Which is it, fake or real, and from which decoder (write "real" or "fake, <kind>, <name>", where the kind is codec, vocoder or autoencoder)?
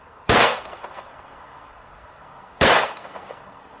fake, codec, SNAC